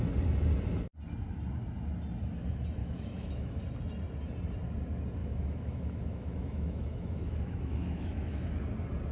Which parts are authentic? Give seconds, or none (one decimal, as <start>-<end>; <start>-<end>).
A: 0.0-2.8; 3.6-5.2; 8.5-9.1